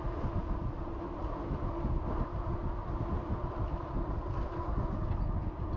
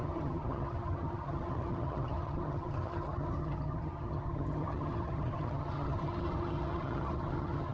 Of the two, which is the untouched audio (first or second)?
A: first